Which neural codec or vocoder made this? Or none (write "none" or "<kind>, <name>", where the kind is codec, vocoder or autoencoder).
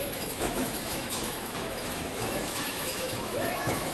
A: autoencoder, DAC-VAE